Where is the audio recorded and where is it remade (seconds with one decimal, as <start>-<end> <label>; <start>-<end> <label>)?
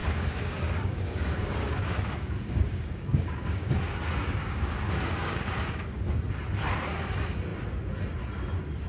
0.0-3.7 remade; 3.7-4.4 recorded; 4.4-6.2 remade; 6.2-8.9 recorded